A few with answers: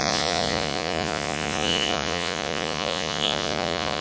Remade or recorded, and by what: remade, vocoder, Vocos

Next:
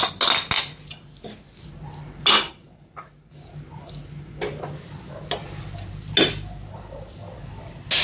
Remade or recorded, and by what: recorded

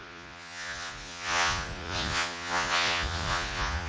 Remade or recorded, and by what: remade, vocoder, Vocos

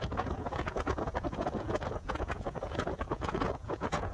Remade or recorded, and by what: remade, vocoder, Vocos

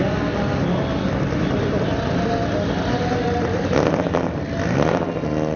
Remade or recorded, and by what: recorded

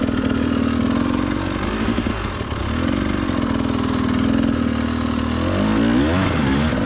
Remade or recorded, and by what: recorded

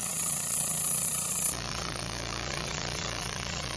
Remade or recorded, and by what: remade, vocoder, Vocos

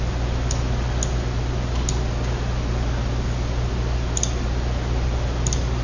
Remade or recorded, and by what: recorded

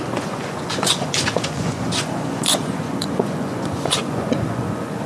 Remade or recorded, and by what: remade, vocoder, Vocos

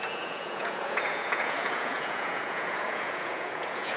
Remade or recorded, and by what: remade, vocoder, Vocos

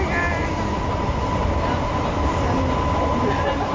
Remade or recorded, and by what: recorded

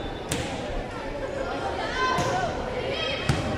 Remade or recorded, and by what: recorded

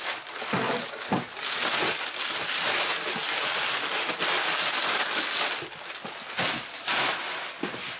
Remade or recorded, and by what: recorded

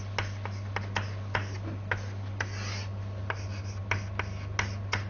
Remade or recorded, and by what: recorded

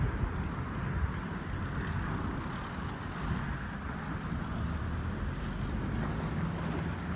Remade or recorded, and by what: recorded